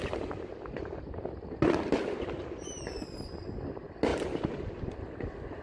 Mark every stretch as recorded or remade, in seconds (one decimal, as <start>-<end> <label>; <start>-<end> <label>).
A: 0.0-5.6 recorded